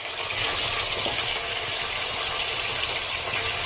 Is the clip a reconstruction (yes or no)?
no